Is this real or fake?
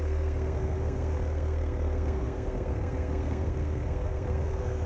fake